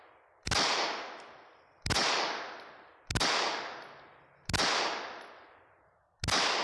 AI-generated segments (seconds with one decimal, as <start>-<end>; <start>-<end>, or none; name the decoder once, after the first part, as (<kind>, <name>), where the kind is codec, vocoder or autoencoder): none